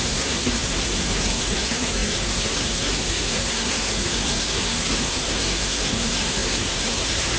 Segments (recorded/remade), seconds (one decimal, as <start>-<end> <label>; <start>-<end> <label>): 0.0-7.4 remade